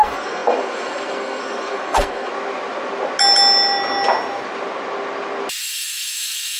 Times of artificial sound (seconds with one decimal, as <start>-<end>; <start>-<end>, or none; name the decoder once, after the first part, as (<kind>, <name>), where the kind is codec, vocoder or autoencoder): 0.0-2.3 (codec, SNAC); 5.6-6.6